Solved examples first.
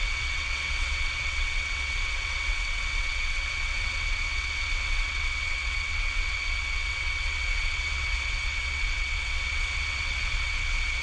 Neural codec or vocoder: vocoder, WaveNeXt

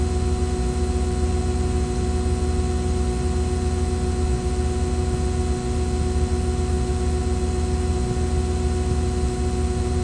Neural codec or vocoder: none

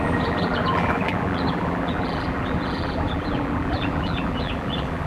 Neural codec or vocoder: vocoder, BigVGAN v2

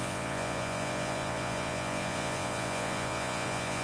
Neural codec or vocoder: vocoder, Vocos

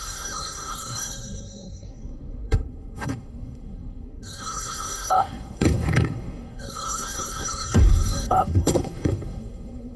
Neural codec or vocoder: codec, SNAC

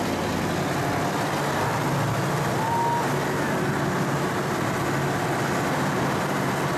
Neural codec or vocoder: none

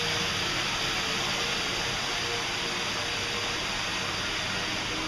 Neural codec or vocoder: none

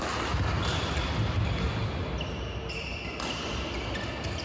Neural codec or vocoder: none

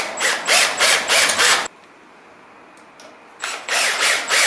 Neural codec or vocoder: none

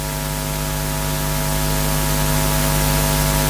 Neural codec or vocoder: none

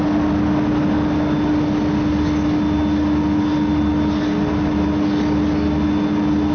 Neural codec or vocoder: none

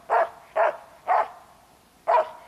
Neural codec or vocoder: none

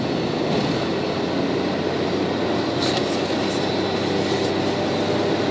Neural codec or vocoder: none